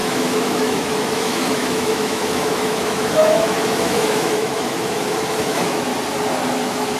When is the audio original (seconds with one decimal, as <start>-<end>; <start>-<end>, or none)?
5.9-6.5